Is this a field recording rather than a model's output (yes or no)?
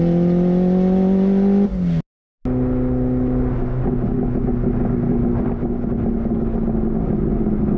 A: yes